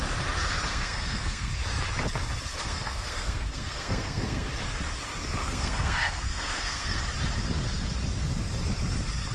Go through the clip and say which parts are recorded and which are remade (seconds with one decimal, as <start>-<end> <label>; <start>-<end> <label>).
0.0-0.7 recorded; 0.7-1.5 remade; 1.5-2.6 recorded; 2.6-4.5 remade; 4.5-5.4 recorded; 5.4-7.0 remade; 7.0-9.3 recorded